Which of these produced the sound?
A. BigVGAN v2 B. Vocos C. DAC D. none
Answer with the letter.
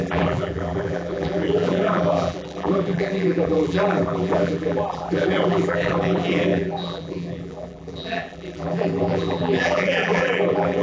A